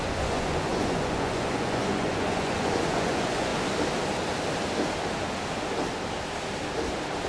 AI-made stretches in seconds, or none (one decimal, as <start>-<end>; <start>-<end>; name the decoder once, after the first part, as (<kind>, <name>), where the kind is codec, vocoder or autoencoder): 0.0-3.5 (vocoder, Vocos)